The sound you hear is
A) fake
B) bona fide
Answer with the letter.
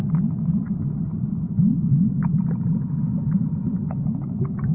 B